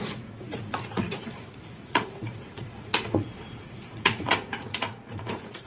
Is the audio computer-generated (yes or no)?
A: yes